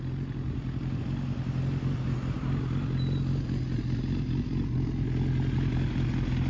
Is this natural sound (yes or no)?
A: yes